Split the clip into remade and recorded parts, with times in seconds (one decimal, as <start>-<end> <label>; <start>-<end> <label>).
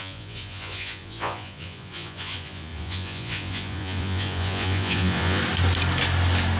0.0-5.4 remade; 5.4-6.6 recorded